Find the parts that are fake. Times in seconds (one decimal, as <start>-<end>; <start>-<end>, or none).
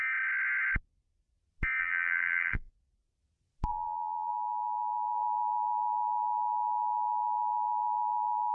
1.8-2.7; 3.7-4.3